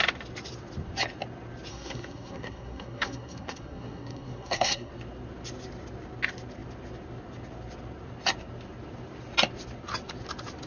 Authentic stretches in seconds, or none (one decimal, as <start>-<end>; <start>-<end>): 0.0-1.7; 4.9-10.7